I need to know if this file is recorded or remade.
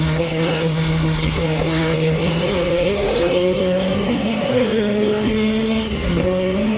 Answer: remade